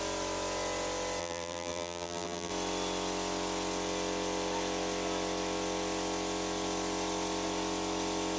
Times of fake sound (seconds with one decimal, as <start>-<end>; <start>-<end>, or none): 1.2-2.5

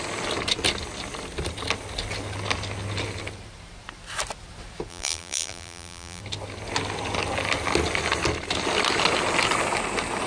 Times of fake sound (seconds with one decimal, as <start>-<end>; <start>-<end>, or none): 4.9-6.2